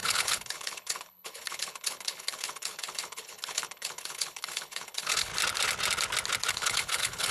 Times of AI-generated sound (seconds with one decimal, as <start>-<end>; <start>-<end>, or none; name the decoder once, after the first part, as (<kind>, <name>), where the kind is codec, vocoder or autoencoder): 0.0-5.3 (codec, HILCodec); 6.5-7.3